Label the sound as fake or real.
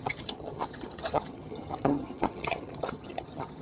fake